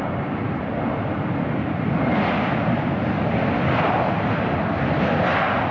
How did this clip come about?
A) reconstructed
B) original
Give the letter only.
B